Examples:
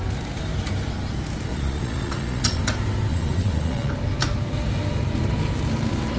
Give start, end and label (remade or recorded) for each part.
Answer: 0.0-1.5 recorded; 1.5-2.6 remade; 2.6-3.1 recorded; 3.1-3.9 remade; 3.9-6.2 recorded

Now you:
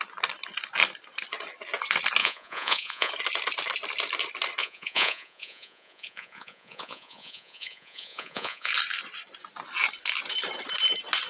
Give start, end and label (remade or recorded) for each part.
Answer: 0.0-2.2 recorded; 2.2-3.1 remade; 3.1-4.6 recorded; 4.6-8.7 remade; 8.7-11.3 recorded

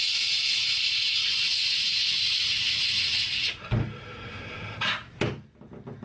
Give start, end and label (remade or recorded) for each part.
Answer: 0.0-3.6 remade; 3.6-6.0 recorded

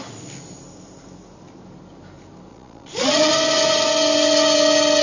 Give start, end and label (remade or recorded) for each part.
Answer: 0.0-2.5 recorded; 2.5-3.3 remade; 3.3-5.0 recorded

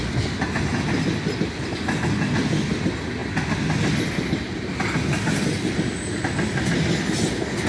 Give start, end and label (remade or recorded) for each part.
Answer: 0.0-7.7 recorded

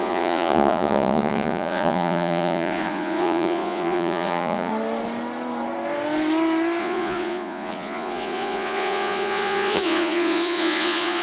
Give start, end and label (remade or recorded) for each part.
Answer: 0.0-4.7 remade; 4.7-6.8 recorded; 6.8-11.2 remade

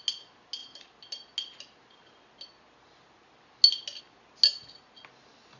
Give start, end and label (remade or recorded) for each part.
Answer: 0.0-5.6 recorded